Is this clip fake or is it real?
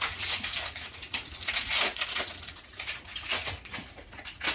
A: fake